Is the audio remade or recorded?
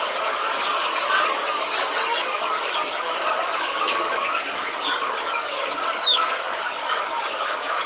remade